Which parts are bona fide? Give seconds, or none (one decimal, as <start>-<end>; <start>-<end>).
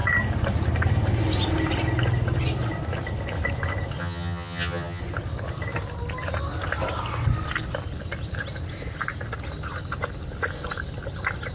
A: 0.0-4.0; 5.0-11.5